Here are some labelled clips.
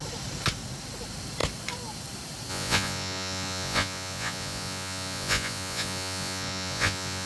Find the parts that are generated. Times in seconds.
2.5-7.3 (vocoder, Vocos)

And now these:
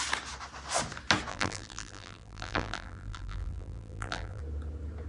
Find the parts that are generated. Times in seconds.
1.3-4.4 (vocoder, BigVGAN v2)

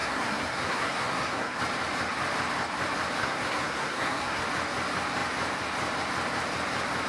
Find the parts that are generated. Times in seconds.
0.0-1.6 (codec, SNAC); 3.2-4.4

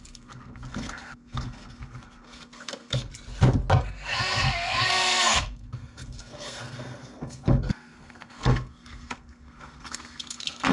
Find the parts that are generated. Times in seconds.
0.0-3.1 (codec, SNAC); 3.8-10.7

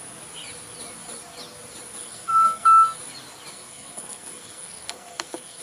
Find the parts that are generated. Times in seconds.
2.0-3.0 (codec, SNAC); 3.5-5.6

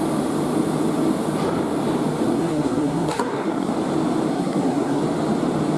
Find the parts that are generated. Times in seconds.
2.3-3.7 (codec, SNAC); 4.3-5.0